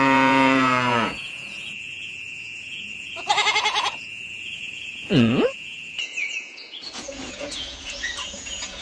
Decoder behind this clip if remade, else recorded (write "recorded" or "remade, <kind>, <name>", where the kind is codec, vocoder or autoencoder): remade, vocoder, Vocos